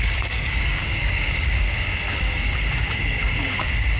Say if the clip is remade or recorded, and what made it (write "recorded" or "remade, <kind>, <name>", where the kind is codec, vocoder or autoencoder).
remade, codec, DAC